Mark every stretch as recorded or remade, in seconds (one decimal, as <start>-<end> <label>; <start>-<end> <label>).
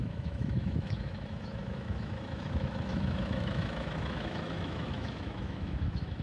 0.0-6.2 remade